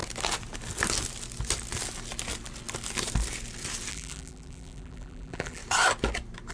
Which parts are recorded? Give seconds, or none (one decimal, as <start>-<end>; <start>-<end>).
0.0-3.9; 5.6-6.5

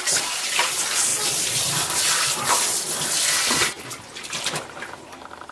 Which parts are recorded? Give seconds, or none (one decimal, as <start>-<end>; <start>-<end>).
1.1-4.4